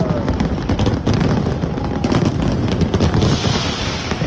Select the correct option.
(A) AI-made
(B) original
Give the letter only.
B